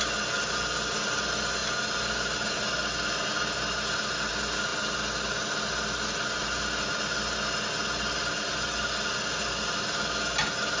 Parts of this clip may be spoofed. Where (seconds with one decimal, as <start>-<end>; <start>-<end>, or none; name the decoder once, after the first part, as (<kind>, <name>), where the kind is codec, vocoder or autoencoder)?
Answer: none